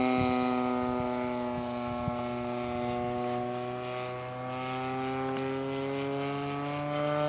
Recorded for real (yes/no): yes